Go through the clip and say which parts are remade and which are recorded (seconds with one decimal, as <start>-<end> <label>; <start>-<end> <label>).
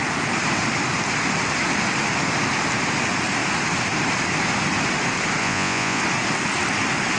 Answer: 0.0-5.4 recorded; 5.4-6.0 remade; 6.0-7.2 recorded